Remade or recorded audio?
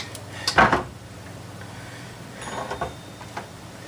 remade